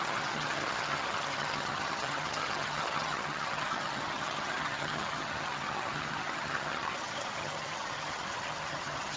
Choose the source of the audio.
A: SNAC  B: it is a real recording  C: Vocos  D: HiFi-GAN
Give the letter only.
D